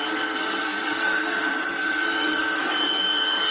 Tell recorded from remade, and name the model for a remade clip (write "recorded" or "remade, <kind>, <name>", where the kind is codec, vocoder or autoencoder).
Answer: remade, codec, SNAC